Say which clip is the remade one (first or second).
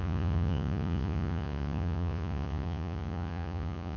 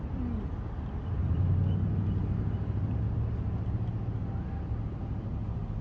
first